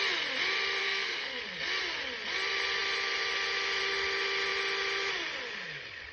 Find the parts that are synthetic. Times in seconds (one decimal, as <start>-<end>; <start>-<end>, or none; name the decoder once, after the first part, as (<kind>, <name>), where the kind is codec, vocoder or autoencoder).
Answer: 0.8-1.4 (codec, SNAC)